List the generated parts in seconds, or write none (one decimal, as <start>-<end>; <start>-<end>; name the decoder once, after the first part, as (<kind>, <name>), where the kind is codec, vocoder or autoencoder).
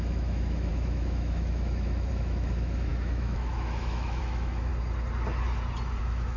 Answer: 0.0-4.7 (autoencoder, DAC-VAE); 6.0-6.4